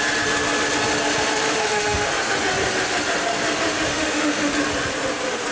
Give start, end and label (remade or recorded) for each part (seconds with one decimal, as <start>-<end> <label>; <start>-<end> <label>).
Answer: 0.0-1.3 recorded; 1.3-2.1 remade; 2.1-3.9 recorded; 3.9-4.5 remade; 4.5-5.5 recorded